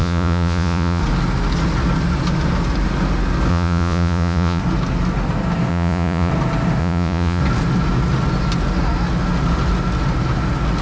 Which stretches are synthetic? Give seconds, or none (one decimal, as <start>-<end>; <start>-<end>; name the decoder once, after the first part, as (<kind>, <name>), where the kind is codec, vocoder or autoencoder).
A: 0.0-1.0 (vocoder, Vocos); 3.5-4.6; 5.7-6.3; 6.8-7.4